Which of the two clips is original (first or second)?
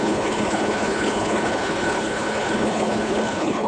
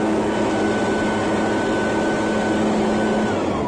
second